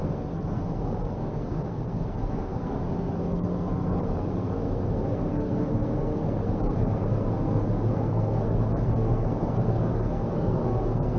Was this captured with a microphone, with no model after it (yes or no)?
no